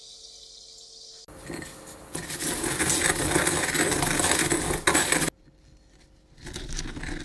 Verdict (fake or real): real